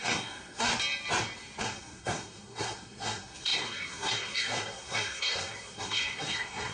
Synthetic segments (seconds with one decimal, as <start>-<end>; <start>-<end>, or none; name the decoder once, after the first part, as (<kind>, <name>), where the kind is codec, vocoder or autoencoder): 0.0-0.7 (codec, SNAC); 1.6-6.7

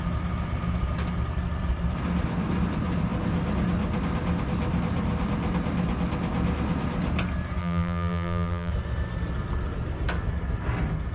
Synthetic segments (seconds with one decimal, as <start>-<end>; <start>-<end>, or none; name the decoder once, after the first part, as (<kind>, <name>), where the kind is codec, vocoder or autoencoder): 7.6-8.7 (vocoder, BigVGAN v2)

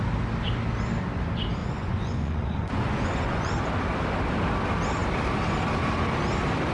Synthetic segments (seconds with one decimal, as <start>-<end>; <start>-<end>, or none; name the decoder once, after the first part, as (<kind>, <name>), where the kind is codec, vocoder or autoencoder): 1.6-3.5 (vocoder, Vocos)

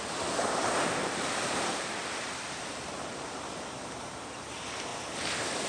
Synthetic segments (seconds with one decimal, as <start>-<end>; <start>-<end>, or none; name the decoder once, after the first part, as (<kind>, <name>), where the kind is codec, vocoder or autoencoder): 0.0-2.4 (vocoder, BigVGAN v2); 3.1-4.9

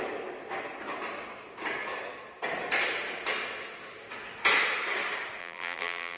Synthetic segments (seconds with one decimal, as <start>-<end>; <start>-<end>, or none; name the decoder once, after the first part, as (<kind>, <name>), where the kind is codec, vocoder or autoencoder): 5.4-6.2 (vocoder, BigVGAN v2)

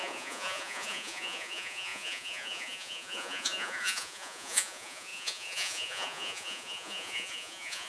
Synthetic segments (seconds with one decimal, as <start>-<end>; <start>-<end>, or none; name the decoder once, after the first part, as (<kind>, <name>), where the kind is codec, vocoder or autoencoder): 0.0-7.9 (vocoder, Vocos)

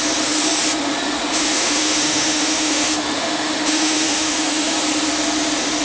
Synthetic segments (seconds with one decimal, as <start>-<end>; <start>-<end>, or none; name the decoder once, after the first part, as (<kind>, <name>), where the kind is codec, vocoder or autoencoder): 1.3-4.8 (autoencoder, DAC-VAE)